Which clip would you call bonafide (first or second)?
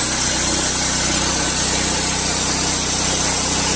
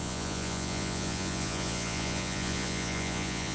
first